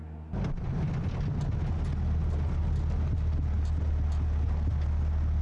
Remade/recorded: recorded